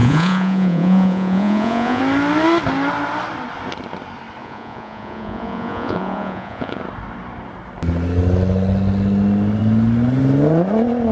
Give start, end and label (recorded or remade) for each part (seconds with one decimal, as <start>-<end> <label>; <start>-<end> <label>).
0.0-2.0 remade; 2.0-4.4 recorded; 4.4-6.8 remade; 6.8-11.1 recorded